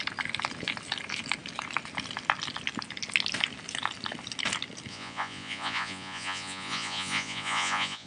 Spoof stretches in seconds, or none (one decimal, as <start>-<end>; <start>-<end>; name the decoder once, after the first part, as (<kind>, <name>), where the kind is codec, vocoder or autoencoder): 4.9-8.1 (vocoder, Vocos)